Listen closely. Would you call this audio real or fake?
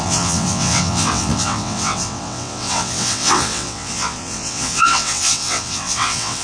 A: fake